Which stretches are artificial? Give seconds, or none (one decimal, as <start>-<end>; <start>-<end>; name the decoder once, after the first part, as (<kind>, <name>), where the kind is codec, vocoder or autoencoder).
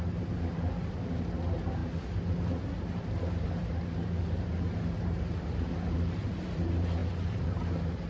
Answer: 0.0-1.8 (vocoder, BigVGAN v2); 2.7-8.1